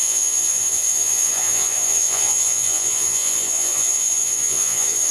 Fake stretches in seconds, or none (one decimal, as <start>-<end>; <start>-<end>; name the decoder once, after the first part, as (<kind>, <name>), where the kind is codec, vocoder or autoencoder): 0.0-5.1 (vocoder, Vocos)

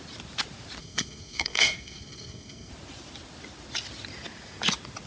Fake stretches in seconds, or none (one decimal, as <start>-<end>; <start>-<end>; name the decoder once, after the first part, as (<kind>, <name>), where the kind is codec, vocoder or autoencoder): 0.8-2.7 (codec, SNAC)